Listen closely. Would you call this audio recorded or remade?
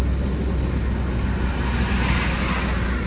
recorded